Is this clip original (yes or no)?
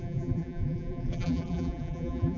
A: no